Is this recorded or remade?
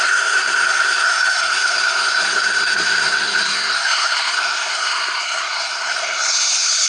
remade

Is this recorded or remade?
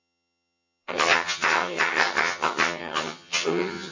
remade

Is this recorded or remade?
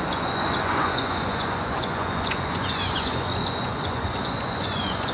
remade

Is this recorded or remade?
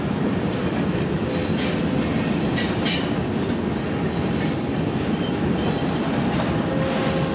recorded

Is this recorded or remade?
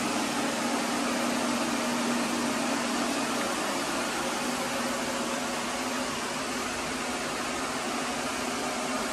recorded